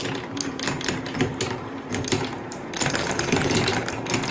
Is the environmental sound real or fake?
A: fake